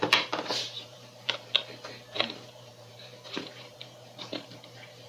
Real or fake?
fake